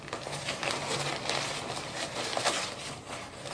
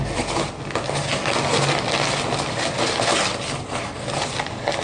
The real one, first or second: second